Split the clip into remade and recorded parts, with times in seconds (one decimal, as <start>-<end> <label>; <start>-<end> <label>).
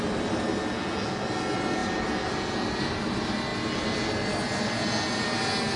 0.0-5.8 recorded